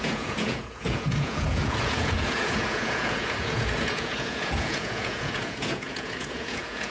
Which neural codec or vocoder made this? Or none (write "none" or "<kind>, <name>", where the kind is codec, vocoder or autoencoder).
vocoder, Vocos